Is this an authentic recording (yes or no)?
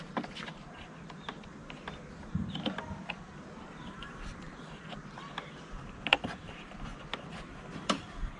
no